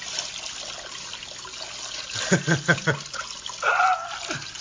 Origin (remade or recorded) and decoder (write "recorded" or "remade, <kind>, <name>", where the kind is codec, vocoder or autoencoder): recorded